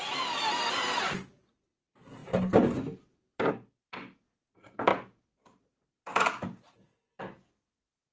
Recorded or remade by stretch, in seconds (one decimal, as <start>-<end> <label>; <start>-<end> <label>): 0.0-8.1 recorded